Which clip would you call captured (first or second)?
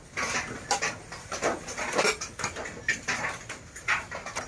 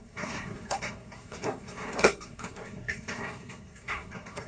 first